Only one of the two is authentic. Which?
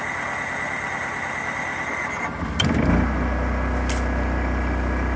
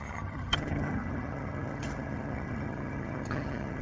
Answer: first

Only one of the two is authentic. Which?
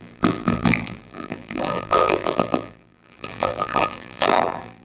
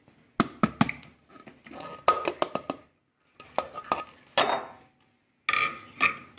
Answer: second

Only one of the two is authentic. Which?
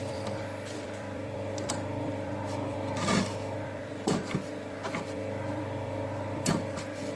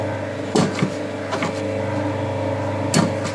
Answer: second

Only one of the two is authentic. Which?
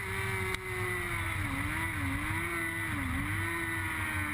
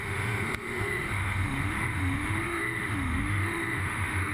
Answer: first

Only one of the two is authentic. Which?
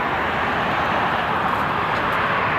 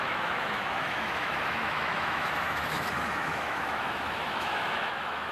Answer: first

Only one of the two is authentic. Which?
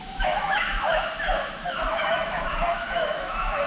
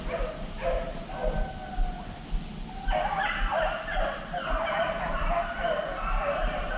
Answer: second